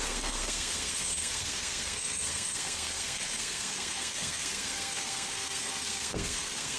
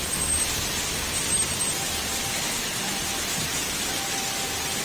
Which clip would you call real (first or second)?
second